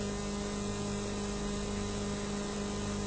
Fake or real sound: real